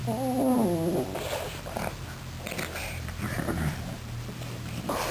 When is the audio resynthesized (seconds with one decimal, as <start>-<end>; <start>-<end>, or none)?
2.8-5.1